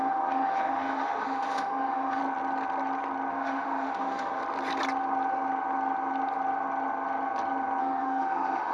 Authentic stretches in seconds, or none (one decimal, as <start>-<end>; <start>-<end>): 2.2-3.3; 4.4-7.8